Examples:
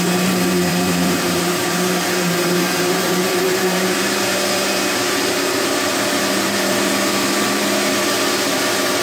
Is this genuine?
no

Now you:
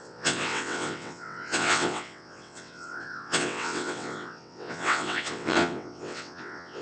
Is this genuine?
no